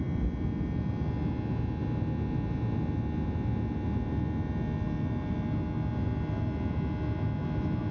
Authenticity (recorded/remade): recorded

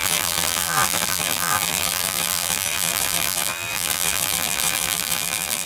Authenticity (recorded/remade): remade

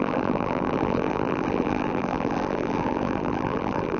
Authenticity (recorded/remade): remade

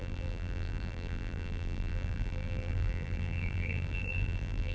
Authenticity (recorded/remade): remade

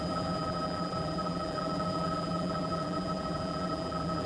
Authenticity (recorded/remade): remade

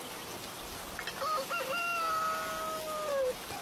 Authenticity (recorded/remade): recorded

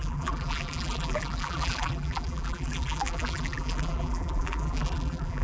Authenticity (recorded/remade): remade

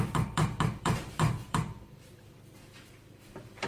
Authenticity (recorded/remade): remade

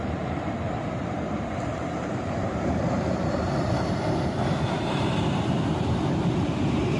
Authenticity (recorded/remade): remade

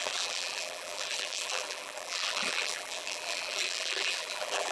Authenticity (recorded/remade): remade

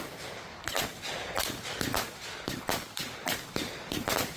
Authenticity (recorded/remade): recorded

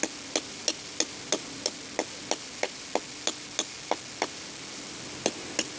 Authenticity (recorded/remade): recorded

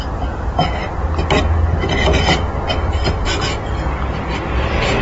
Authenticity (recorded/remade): recorded